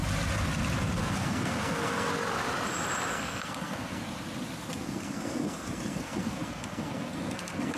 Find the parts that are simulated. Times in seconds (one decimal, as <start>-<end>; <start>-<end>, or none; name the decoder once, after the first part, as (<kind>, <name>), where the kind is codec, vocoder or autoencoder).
0.8-2.1 (codec, SNAC); 3.1-4.0; 4.7-7.8